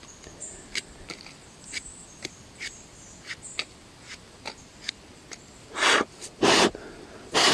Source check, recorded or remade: recorded